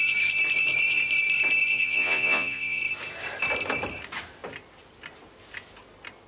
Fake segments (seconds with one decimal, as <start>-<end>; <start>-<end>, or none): 1.7-2.8